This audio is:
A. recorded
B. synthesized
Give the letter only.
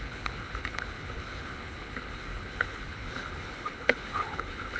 B